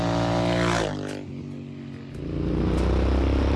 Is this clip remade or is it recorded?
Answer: recorded